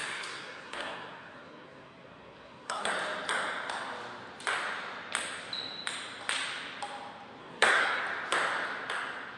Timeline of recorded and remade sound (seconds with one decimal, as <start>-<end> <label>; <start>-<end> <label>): 0.0-2.9 remade; 2.9-7.4 recorded; 7.4-8.0 remade; 8.0-9.4 recorded